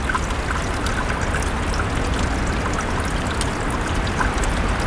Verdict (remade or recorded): recorded